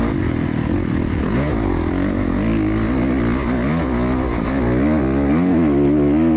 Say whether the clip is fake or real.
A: real